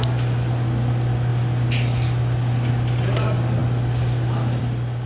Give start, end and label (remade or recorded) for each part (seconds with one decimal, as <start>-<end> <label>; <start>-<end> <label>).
0.0-5.1 recorded